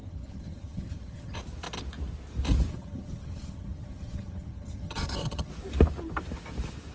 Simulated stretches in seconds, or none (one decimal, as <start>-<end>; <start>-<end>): 0.0-1.4; 2.7-5.5